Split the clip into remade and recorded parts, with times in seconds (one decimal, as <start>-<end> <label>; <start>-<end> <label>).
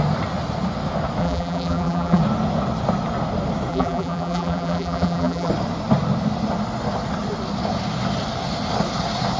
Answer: 0.0-1.2 recorded; 1.2-2.2 remade; 2.2-3.7 recorded; 3.7-5.5 remade; 5.5-9.4 recorded